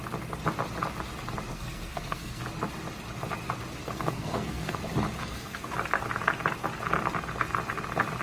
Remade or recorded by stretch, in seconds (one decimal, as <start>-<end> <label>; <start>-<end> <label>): 0.0-1.5 recorded; 1.5-2.4 remade; 2.4-3.8 recorded; 3.8-4.8 remade; 4.8-5.2 recorded; 5.2-5.7 remade; 5.7-8.2 recorded

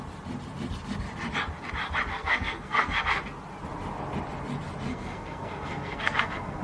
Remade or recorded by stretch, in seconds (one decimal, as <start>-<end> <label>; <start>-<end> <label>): 0.0-2.1 recorded; 2.1-3.2 remade; 3.2-4.9 recorded; 4.9-6.6 remade

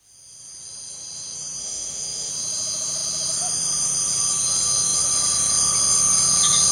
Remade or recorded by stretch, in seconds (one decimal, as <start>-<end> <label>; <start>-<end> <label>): 0.0-1.6 recorded; 1.6-2.3 remade; 2.3-6.7 recorded